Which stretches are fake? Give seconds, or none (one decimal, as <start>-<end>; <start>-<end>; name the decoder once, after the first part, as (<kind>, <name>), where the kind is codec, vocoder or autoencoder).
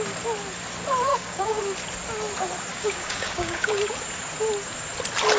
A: 1.1-1.6 (codec, DAC); 2.7-3.8